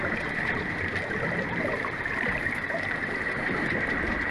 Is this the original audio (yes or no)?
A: no